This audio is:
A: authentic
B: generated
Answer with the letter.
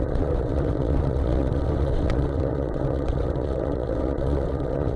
B